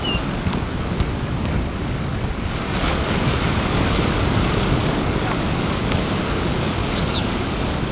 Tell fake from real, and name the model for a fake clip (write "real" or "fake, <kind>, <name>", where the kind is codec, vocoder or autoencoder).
fake, codec, DAC